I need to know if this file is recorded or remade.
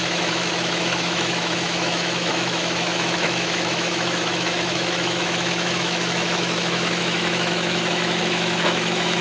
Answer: remade